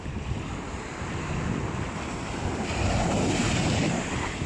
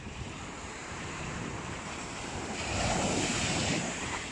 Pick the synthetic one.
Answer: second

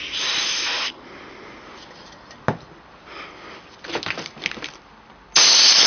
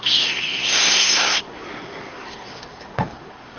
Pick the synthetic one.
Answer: second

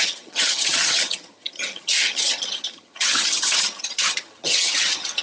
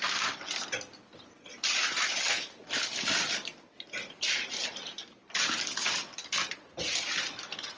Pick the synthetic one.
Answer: first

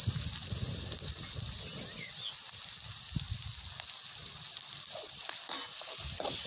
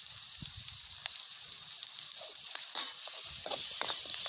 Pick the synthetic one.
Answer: second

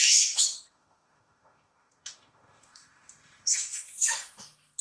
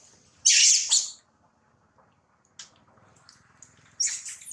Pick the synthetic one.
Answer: first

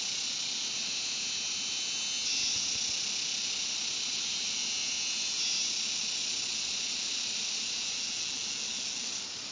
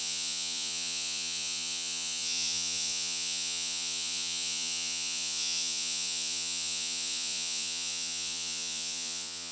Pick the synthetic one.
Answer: second